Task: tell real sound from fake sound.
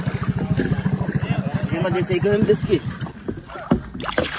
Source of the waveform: real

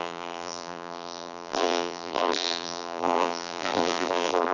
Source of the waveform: fake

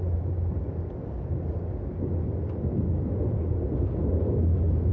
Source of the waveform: real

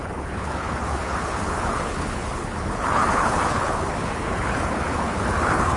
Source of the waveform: fake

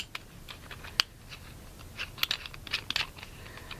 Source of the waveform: real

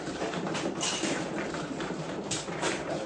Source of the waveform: fake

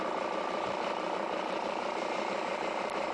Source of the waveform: real